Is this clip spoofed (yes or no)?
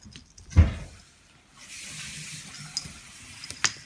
no